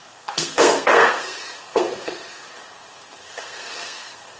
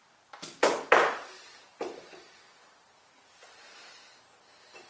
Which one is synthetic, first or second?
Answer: first